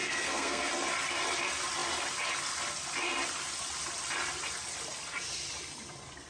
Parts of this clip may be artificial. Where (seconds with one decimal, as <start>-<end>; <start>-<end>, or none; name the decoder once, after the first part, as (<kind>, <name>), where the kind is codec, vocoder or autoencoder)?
0.0-0.7 (codec, SNAC)